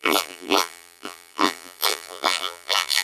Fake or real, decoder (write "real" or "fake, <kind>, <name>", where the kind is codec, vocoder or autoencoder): fake, vocoder, BigVGAN v2